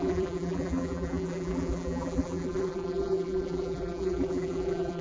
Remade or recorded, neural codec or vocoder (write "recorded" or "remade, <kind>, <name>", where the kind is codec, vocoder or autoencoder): remade, vocoder, BigVGAN v2